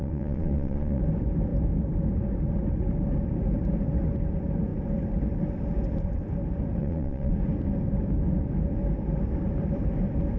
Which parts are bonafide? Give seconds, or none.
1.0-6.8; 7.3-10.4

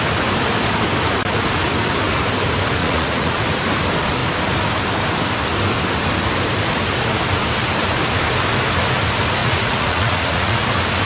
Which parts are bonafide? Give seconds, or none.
0.0-2.8; 3.4-9.4; 10.7-11.1